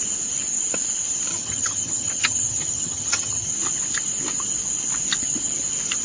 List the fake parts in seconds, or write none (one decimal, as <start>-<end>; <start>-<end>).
1.3-3.5